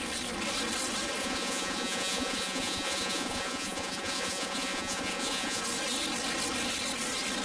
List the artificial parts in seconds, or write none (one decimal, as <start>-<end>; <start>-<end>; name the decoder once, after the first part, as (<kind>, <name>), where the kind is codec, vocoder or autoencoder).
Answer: 1.2-5.6 (vocoder, Vocos)